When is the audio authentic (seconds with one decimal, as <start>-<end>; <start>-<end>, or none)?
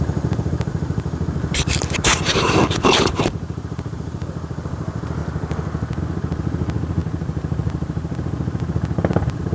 5.2-6.0